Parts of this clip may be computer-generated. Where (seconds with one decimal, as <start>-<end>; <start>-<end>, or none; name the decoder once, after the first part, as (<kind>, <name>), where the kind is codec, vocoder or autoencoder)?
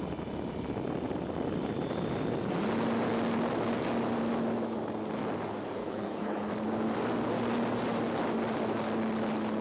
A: 5.8-6.5 (codec, HILCodec)